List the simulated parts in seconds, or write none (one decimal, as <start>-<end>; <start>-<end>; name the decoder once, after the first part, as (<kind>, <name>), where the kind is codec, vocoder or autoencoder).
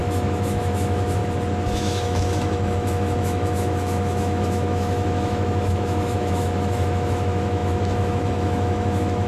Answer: 0.0-1.2 (autoencoder, DAC-VAE); 1.7-9.3